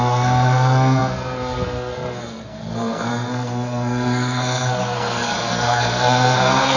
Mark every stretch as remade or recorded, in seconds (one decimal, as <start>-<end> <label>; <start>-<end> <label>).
0.0-6.8 remade